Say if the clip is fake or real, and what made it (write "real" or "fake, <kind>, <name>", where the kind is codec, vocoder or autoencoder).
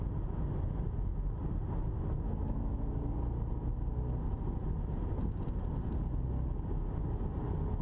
real